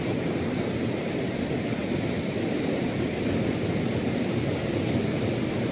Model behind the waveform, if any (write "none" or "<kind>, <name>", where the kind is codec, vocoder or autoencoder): none